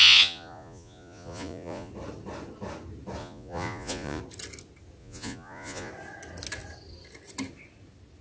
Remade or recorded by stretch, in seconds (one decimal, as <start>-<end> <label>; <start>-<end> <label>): 0.0-1.9 remade; 1.9-3.2 recorded; 3.2-4.2 remade; 4.2-5.0 recorded; 5.0-5.9 remade; 5.9-8.2 recorded